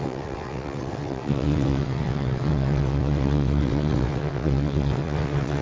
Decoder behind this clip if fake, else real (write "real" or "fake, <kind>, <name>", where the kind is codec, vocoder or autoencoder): fake, vocoder, WaveNeXt